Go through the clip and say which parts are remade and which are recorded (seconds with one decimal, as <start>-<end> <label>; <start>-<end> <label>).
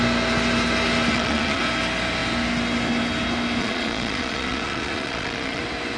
0.0-1.1 recorded; 1.1-1.6 remade; 1.6-3.6 recorded; 3.6-5.6 remade; 5.6-6.0 recorded